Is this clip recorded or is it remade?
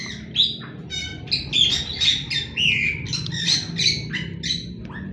recorded